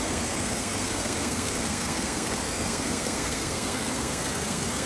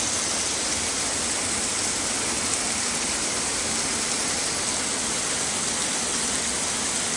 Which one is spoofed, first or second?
first